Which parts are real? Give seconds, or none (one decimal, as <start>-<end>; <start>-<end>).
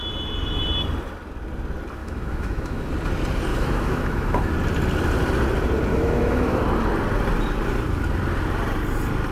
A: 0.0-2.0; 2.9-3.5; 4.5-5.9; 6.6-9.3